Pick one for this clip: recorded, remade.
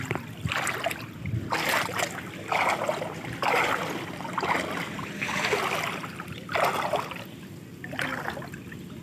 recorded